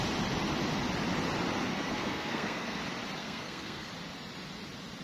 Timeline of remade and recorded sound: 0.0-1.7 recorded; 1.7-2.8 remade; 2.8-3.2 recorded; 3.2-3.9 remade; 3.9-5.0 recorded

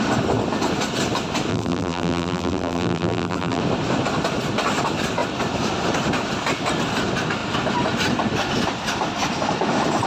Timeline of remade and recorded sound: 0.0-1.5 recorded; 1.5-3.6 remade; 3.6-10.1 recorded